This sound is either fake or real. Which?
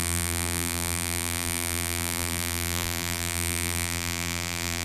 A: fake